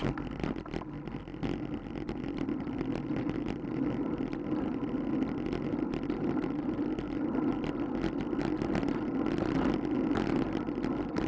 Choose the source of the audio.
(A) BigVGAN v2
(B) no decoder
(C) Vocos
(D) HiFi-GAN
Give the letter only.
B